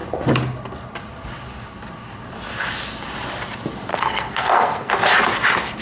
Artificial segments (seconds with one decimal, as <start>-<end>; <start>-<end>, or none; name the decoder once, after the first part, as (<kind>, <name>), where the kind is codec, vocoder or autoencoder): 3.9-4.9 (codec, SNAC)